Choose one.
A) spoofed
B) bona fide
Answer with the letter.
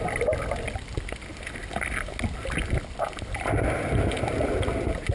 B